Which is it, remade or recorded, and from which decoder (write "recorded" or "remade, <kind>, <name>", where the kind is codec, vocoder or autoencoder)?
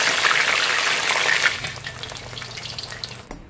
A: recorded